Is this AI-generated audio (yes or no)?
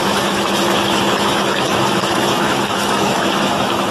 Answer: yes